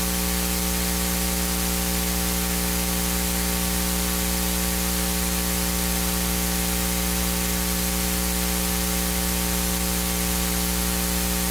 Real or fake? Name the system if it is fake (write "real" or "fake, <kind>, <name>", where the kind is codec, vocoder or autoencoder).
real